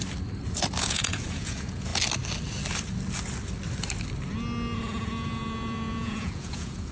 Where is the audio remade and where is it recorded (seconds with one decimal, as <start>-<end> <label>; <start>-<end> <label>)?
0.0-0.8 recorded; 0.8-1.9 remade; 1.9-4.8 recorded; 4.8-6.9 remade